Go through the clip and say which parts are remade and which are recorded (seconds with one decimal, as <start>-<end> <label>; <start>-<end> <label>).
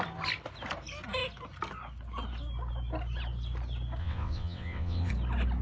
0.0-4.0 recorded; 4.0-5.1 remade; 5.1-5.6 recorded